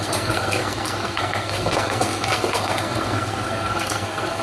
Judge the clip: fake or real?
fake